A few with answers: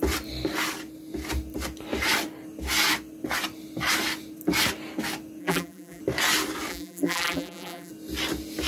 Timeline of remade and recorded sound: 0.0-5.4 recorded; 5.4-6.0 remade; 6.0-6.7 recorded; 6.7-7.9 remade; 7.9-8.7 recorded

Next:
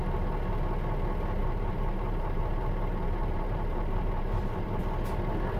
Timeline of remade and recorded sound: 0.0-1.4 recorded; 1.4-4.8 remade; 4.8-5.6 recorded

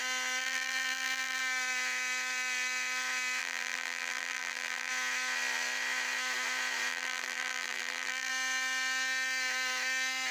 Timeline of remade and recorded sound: 0.0-0.4 recorded; 0.4-1.4 remade; 1.4-3.4 recorded; 3.4-4.9 remade; 4.9-6.9 recorded; 6.9-8.3 remade; 8.3-10.3 recorded

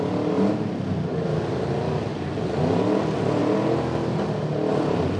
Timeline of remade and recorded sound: 0.0-5.2 recorded